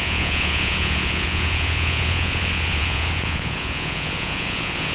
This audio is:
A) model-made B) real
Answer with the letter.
A